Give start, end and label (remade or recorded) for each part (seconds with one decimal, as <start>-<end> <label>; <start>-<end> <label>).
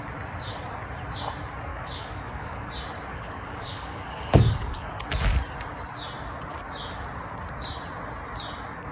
0.0-1.7 recorded; 1.7-2.7 remade; 2.7-3.1 recorded; 3.1-4.9 remade; 4.9-8.9 recorded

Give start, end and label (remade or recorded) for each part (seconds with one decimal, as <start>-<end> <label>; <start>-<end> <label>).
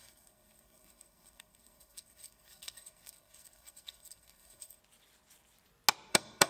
0.0-4.8 remade; 4.8-6.1 recorded; 6.1-6.5 remade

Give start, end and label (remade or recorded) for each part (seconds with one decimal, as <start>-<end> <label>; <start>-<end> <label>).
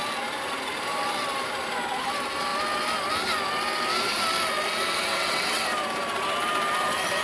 0.0-5.1 recorded; 5.1-5.6 remade; 5.6-7.2 recorded